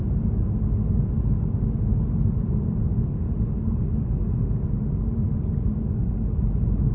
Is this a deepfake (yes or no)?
no